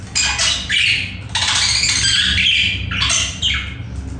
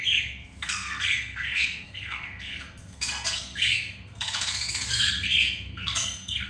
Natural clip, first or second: first